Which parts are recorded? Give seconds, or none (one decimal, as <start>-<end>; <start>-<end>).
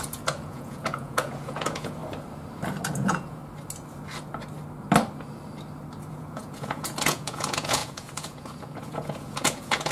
2.0-2.9; 3.4-6.1